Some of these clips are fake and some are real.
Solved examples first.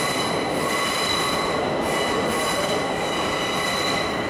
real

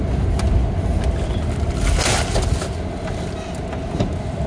real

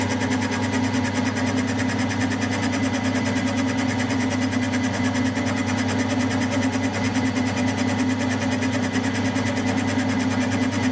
real